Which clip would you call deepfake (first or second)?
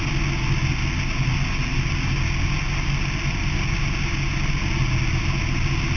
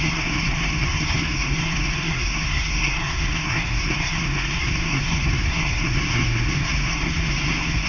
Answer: second